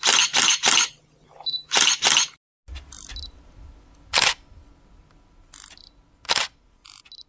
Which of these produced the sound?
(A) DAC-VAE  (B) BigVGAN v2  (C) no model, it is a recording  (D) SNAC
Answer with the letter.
C